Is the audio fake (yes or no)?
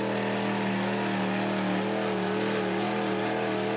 no